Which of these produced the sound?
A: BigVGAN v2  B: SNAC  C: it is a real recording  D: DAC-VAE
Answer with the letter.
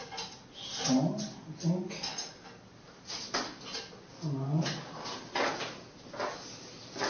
C